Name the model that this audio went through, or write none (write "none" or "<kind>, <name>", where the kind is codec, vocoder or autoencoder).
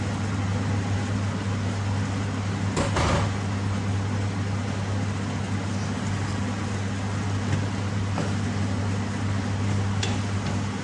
none